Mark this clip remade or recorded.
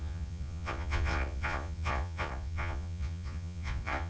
remade